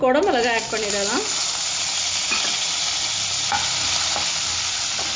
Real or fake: real